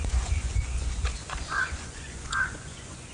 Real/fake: fake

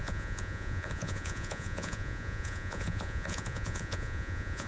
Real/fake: fake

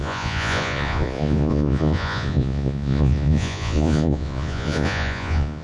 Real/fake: fake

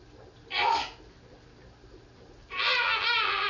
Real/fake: real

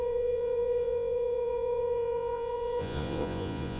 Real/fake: fake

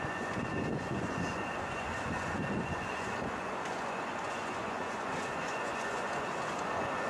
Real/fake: fake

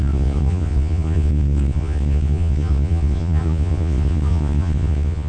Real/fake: fake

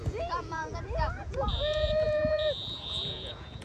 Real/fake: fake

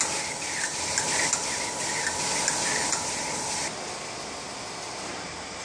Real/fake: real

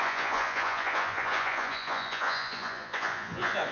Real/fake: fake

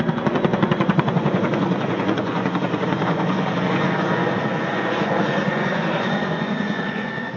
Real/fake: fake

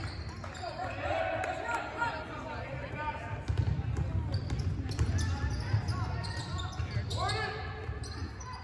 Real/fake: real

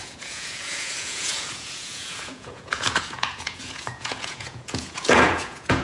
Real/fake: fake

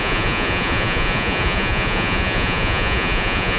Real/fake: fake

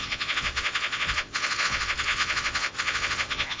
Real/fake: fake